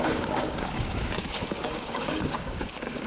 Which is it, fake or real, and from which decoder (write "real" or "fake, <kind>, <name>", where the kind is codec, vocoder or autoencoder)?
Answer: fake, codec, DAC